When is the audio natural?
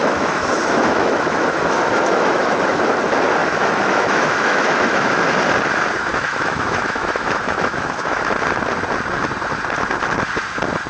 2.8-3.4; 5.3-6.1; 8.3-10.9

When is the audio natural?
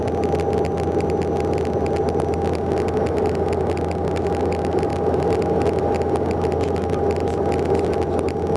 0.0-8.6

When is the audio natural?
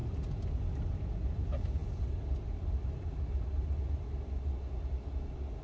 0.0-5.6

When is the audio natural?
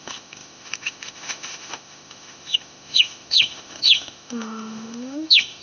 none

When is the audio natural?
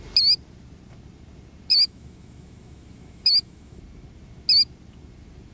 0.0-1.7; 3.8-5.5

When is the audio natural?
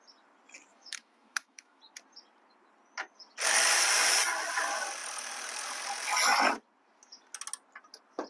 0.0-0.7; 1.8-8.3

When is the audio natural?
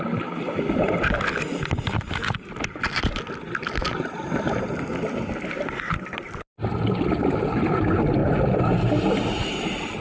0.0-10.0